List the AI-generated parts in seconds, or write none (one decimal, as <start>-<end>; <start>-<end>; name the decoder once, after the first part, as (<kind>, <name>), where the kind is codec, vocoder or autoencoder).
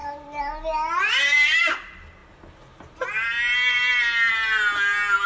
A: none